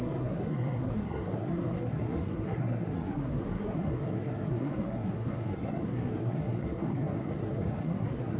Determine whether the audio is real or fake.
fake